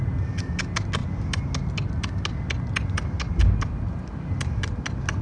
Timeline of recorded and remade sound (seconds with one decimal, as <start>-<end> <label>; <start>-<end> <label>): 0.0-5.2 recorded